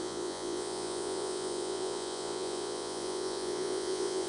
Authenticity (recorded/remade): remade